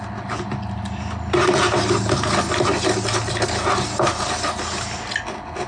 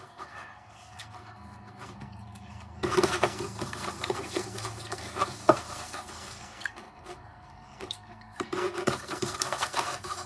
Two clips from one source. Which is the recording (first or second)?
first